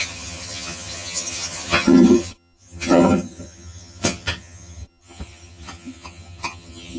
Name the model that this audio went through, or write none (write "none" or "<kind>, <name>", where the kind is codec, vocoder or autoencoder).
vocoder, HiFi-GAN